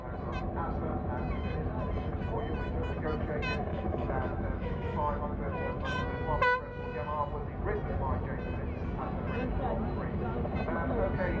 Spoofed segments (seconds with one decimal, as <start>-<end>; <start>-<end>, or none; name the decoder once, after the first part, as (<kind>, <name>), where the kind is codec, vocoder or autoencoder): 3.7-6.0 (autoencoder, DAC-VAE)